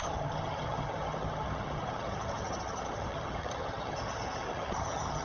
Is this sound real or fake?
fake